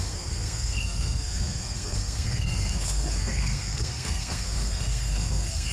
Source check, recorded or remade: remade